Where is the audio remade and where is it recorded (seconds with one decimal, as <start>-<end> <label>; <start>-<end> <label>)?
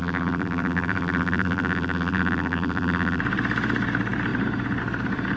0.0-3.2 remade; 3.2-5.4 recorded